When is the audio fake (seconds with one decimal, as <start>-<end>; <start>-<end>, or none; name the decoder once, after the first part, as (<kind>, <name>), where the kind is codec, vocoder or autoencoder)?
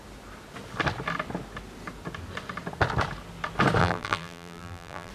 3.8-5.1 (vocoder, BigVGAN v2)